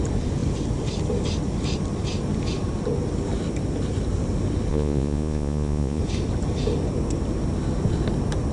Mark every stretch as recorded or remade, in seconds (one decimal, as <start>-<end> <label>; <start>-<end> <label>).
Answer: 0.0-4.7 recorded; 4.7-6.0 remade; 6.0-8.5 recorded

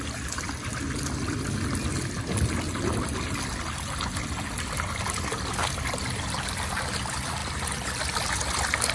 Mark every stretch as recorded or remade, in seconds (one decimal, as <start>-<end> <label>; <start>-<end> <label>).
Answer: 0.0-8.9 recorded